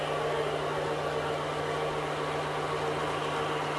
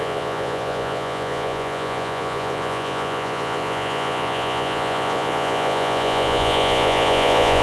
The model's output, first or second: second